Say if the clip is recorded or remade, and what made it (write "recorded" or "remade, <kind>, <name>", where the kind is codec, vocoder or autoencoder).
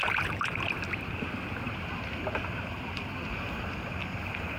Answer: recorded